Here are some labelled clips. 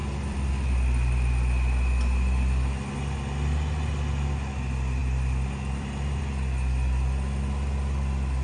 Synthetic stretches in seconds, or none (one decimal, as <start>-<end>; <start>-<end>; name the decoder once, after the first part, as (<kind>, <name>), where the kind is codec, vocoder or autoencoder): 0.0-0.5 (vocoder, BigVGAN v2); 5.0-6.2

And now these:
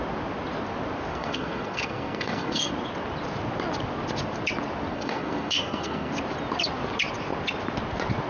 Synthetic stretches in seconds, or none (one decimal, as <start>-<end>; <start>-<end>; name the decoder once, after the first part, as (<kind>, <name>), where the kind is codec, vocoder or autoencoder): 1.1-2.7 (codec, SNAC); 4.9-6.1

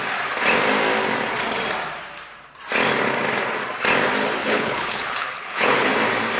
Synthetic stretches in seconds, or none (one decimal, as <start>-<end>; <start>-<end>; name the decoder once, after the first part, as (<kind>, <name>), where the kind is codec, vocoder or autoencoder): 4.4-5.9 (codec, HILCodec)

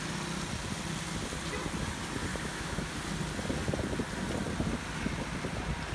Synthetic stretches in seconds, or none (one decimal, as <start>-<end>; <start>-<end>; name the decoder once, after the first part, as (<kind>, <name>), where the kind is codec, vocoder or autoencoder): 2.3-2.9 (autoencoder, DAC-VAE)